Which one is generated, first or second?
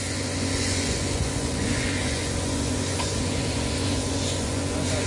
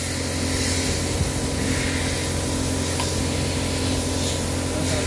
first